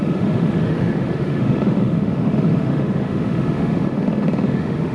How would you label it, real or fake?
fake